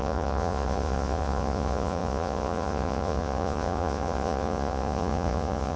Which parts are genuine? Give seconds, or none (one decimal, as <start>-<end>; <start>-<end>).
none